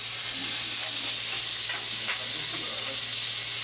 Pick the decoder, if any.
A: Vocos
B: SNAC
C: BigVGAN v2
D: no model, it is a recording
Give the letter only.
D